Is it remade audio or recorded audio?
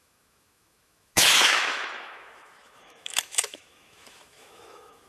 remade